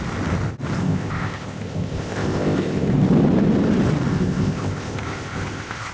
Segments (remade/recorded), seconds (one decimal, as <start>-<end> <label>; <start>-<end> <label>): 0.0-0.8 recorded; 0.8-2.9 remade; 2.9-4.1 recorded; 4.1-5.9 remade